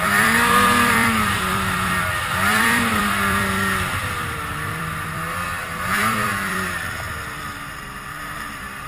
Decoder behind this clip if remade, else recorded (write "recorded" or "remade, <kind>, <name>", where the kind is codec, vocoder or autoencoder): remade, vocoder, BigVGAN v2